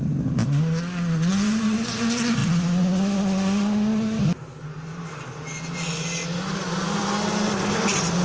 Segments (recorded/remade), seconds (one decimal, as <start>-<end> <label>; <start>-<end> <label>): 0.0-8.2 recorded